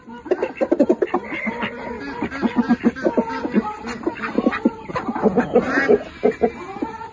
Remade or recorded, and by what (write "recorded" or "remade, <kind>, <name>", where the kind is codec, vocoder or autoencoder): recorded